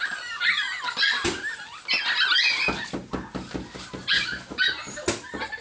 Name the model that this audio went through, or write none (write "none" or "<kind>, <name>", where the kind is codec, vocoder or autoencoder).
none